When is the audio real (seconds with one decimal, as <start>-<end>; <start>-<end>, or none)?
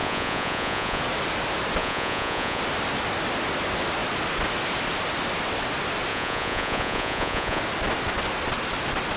1.0-1.8; 2.6-6.1; 7.6-9.2